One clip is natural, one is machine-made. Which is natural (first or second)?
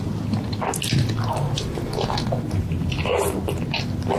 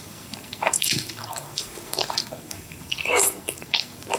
first